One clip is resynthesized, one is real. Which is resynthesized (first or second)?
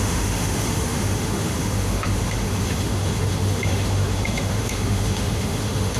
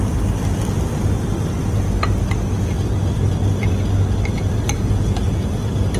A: first